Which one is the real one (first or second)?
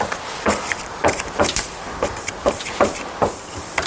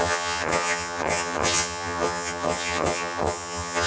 first